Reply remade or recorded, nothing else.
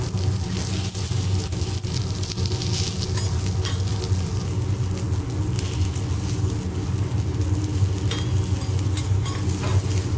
recorded